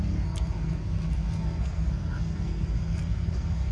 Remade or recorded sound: remade